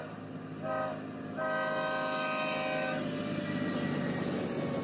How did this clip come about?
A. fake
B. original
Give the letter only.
B